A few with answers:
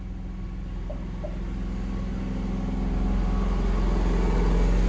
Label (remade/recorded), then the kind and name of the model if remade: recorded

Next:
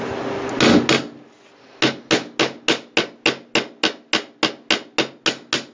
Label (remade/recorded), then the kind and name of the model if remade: recorded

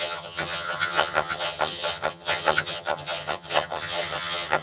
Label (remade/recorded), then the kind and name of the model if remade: remade, vocoder, HiFi-GAN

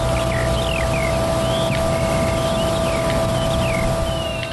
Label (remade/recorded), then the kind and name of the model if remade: recorded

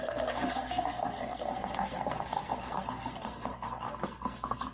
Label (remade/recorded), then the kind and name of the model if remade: remade, codec, SNAC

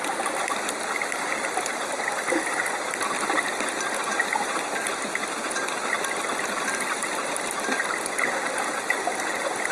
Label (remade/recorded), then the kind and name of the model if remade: recorded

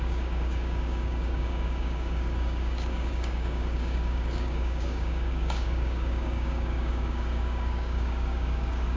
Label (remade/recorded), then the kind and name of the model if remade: remade, codec, DAC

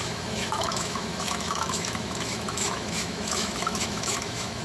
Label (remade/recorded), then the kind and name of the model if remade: remade, autoencoder, DAC-VAE